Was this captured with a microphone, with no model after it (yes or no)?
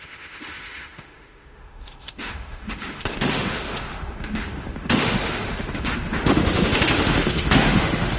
no